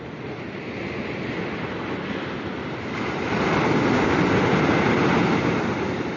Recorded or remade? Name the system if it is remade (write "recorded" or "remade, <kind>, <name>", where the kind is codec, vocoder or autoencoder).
recorded